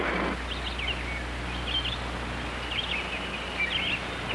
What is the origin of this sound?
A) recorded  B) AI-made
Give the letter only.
A